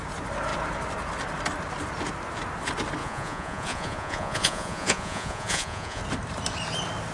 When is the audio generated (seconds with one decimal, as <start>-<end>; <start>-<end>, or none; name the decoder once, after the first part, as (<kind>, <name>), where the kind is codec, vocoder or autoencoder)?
3.0-6.0 (vocoder, Vocos)